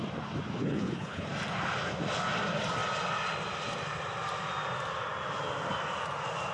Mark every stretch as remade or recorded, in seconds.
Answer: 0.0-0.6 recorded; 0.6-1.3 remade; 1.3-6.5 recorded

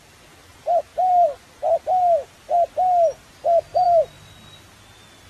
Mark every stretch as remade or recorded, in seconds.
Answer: 0.0-0.9 recorded; 0.9-1.8 remade; 1.8-3.7 recorded; 3.7-4.6 remade; 4.6-5.3 recorded

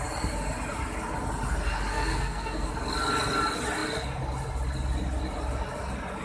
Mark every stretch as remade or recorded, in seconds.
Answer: 0.0-1.9 recorded; 1.9-2.7 remade; 2.7-6.2 recorded

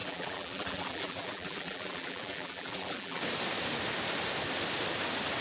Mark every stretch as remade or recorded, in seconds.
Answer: 0.0-3.2 remade; 3.2-5.4 recorded

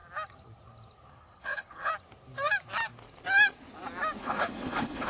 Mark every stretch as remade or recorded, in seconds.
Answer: 0.0-1.1 recorded; 1.1-1.9 remade; 1.9-4.2 recorded; 4.2-5.1 remade

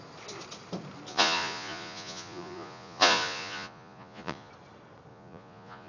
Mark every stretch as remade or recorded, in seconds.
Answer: 0.0-1.1 recorded; 1.1-4.5 remade; 4.5-5.1 recorded; 5.1-5.9 remade

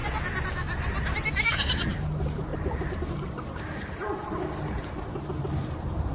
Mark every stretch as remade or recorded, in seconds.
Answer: 0.0-1.9 recorded; 1.9-6.1 remade

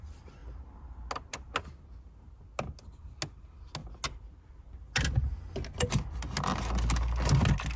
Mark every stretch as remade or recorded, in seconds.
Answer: 0.0-7.8 recorded